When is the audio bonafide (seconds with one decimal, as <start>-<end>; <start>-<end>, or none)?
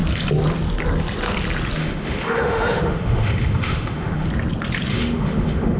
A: 0.0-1.8; 4.3-4.9